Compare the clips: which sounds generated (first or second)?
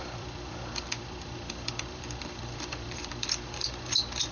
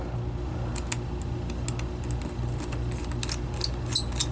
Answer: first